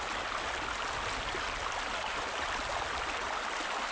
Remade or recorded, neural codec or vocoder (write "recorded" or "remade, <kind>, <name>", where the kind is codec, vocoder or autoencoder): recorded